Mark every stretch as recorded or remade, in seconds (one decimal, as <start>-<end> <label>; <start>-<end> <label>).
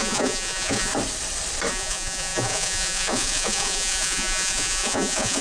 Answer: 0.0-0.9 remade; 0.9-1.7 recorded; 1.7-5.4 remade